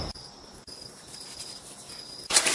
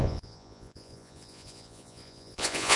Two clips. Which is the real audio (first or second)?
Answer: first